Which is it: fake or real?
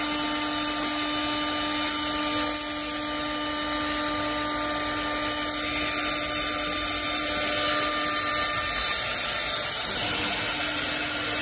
real